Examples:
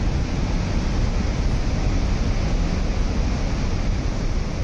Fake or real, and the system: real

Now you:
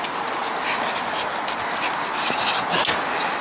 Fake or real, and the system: real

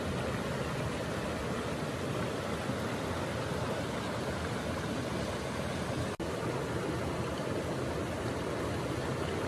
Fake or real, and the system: real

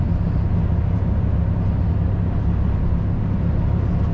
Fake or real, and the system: real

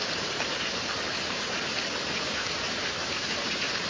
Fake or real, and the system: fake, vocoder, BigVGAN v2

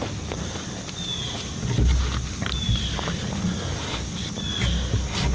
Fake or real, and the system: real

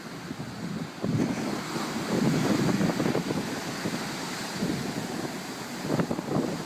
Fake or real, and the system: real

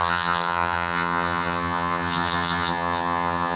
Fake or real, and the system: fake, vocoder, HiFi-GAN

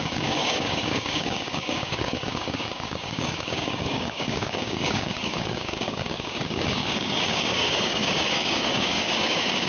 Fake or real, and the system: fake, codec, DAC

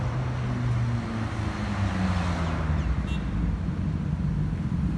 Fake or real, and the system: real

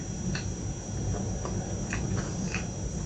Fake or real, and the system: real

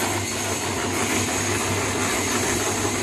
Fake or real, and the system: real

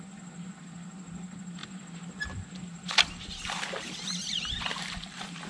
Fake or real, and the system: real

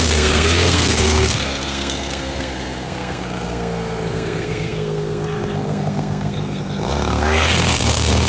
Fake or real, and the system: fake, codec, SNAC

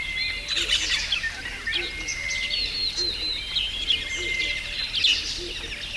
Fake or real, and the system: real